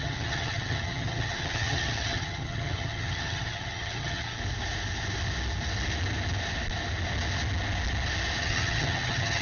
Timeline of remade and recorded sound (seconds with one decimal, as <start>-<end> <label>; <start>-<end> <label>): 0.0-4.4 remade; 4.4-8.4 recorded; 8.4-9.4 remade